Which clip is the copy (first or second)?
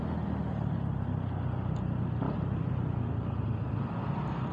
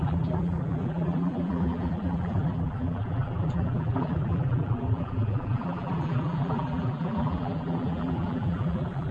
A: second